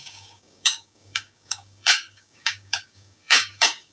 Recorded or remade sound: remade